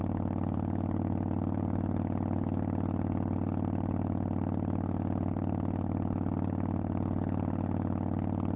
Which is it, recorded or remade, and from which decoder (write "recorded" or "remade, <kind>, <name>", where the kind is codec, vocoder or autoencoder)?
recorded